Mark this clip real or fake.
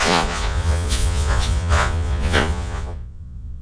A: fake